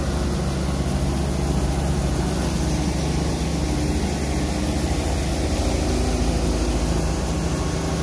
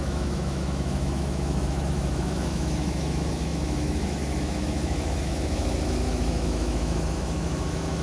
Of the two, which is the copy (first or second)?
second